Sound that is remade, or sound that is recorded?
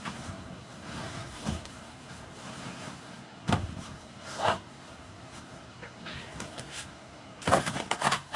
remade